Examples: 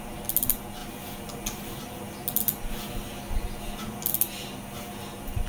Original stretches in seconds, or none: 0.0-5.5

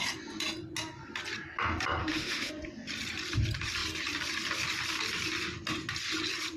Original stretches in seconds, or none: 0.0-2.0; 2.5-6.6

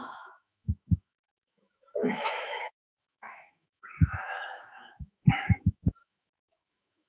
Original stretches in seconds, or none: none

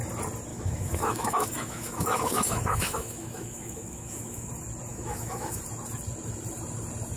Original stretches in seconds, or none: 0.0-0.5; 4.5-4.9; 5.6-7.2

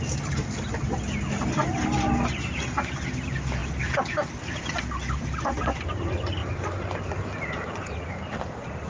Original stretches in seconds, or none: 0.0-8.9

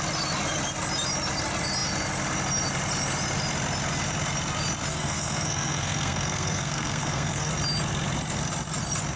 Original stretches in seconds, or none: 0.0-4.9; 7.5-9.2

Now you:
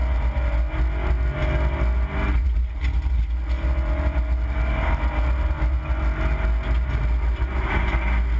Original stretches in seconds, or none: 0.0-8.4